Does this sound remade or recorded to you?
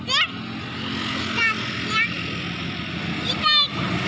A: recorded